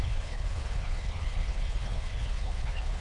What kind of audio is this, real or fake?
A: fake